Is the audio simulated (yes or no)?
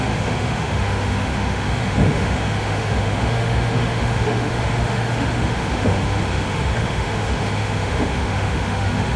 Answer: yes